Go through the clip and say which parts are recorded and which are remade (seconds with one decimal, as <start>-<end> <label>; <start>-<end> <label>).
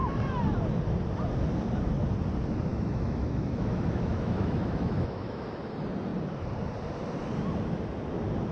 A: 0.0-2.7 recorded; 2.7-5.5 remade; 5.5-8.5 recorded